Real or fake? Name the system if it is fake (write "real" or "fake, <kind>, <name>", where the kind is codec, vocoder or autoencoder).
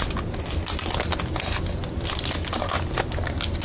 real